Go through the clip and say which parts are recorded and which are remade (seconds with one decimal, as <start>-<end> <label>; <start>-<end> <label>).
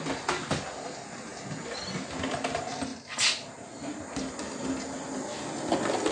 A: 0.0-6.1 recorded